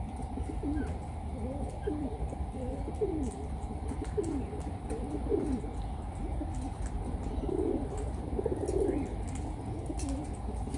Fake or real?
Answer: real